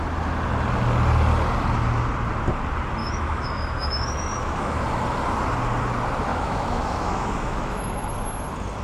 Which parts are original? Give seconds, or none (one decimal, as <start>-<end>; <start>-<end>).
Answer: 0.0-3.0; 4.8-6.3; 8.1-8.8